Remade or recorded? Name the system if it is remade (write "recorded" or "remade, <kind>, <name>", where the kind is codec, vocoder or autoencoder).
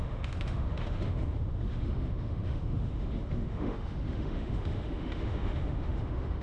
remade, autoencoder, DAC-VAE